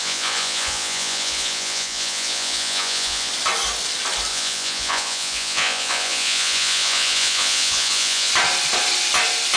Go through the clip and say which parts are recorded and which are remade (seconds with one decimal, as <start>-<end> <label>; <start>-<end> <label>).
0.0-3.3 remade; 3.3-4.3 recorded; 4.3-8.3 remade; 8.3-9.6 recorded